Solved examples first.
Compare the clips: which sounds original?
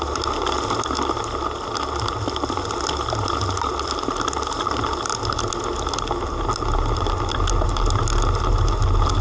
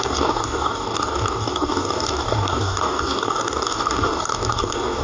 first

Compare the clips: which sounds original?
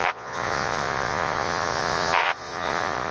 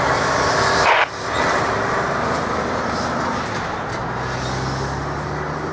second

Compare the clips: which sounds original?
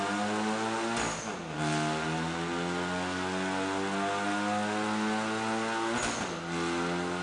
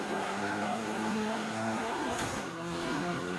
first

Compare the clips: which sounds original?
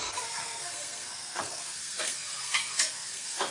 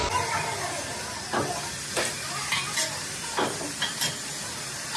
second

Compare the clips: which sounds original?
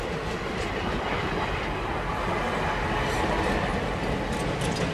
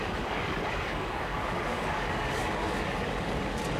first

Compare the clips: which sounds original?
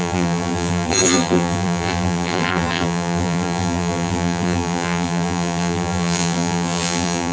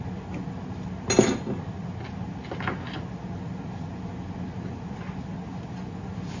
second